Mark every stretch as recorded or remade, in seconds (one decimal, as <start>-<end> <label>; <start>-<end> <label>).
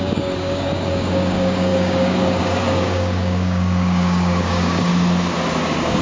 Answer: 0.0-4.9 remade; 4.9-5.6 recorded; 5.6-6.0 remade